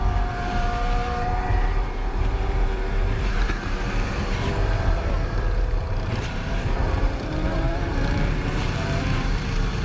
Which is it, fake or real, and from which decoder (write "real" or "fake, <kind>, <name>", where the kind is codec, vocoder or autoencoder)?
fake, vocoder, BigVGAN v2